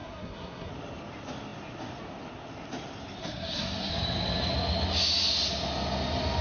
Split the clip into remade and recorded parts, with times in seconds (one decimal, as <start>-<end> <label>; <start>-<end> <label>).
0.0-0.7 remade; 0.7-3.2 recorded; 3.2-3.9 remade; 3.9-6.4 recorded